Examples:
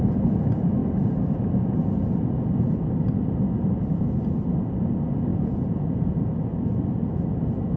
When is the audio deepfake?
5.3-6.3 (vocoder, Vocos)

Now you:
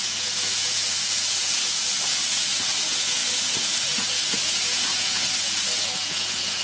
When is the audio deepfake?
0.0-6.6 (vocoder, Vocos)